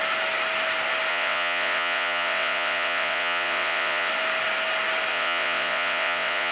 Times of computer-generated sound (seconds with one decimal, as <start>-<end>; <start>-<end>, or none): 1.1-4.1; 5.1-6.5